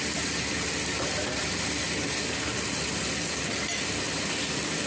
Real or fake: real